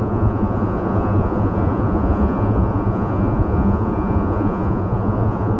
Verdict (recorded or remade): remade